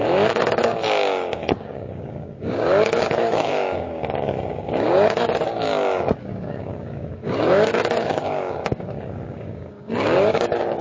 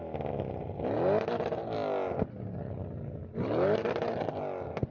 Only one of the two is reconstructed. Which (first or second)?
first